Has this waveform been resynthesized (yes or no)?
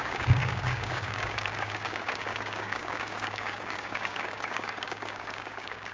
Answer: yes